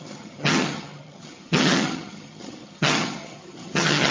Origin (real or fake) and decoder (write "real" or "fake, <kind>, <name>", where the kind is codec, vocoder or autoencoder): fake, vocoder, HiFi-GAN